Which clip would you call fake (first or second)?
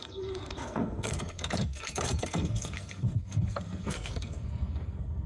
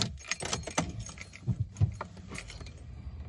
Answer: first